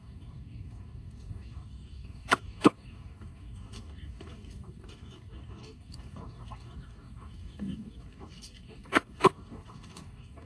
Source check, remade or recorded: remade